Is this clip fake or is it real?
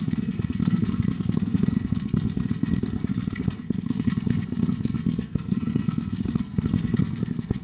fake